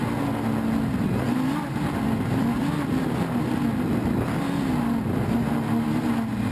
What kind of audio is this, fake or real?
real